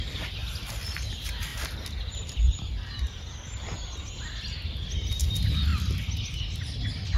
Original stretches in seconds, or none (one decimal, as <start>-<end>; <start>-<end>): 0.0-0.4; 1.1-1.5; 2.9-7.2